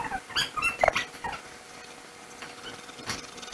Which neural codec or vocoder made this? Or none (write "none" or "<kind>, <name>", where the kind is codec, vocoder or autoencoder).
none